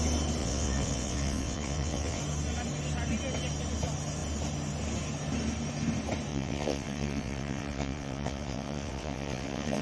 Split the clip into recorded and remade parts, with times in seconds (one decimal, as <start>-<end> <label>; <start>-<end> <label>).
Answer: 0.0-0.4 recorded; 0.4-2.2 remade; 2.2-6.3 recorded; 6.3-9.8 remade